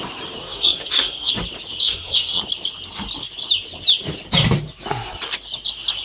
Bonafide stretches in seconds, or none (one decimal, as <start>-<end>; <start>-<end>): 0.0-0.4; 1.3-1.8; 2.4-6.0